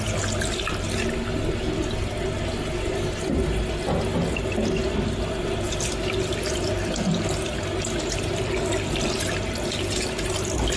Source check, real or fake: real